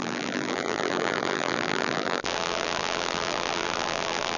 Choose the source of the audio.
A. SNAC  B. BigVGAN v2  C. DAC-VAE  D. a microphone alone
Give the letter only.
B